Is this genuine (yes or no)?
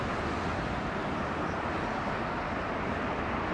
yes